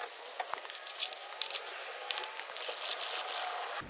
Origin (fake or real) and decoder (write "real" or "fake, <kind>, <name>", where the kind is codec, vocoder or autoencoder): real